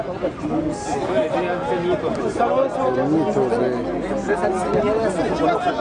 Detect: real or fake real